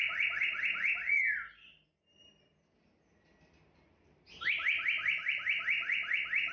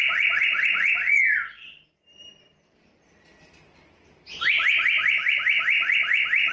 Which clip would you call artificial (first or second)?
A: second